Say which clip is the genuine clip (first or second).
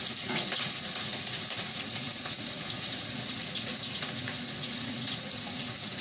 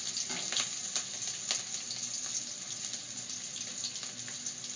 second